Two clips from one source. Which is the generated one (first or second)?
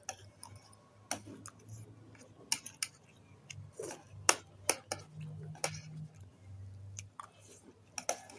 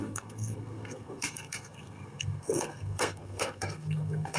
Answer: second